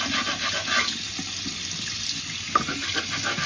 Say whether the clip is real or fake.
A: real